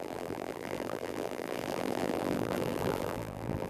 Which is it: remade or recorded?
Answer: remade